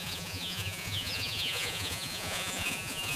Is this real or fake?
fake